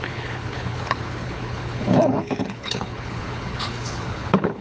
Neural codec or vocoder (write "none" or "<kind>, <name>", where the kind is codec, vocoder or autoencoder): codec, HILCodec